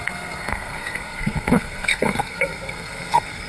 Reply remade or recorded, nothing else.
remade